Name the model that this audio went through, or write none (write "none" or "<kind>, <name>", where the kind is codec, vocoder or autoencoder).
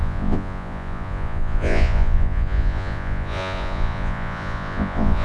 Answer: vocoder, Vocos